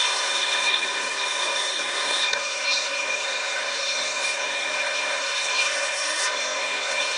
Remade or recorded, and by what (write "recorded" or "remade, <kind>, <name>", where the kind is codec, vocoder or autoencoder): remade, codec, SNAC